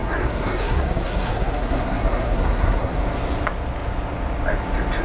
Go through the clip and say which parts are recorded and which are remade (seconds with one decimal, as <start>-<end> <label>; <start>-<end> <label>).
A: 0.0-3.0 remade; 3.0-5.0 recorded